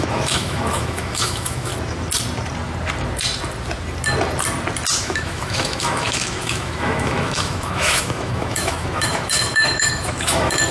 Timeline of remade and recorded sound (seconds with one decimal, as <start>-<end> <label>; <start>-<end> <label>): 0.0-1.7 remade; 1.7-5.0 recorded; 5.0-10.7 remade